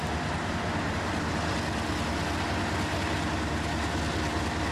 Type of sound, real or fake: real